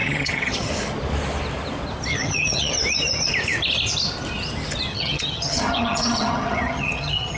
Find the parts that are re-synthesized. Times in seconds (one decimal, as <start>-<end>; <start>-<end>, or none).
0.0-0.7; 2.1-2.7; 4.9-7.4